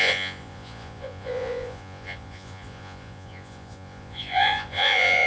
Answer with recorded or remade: remade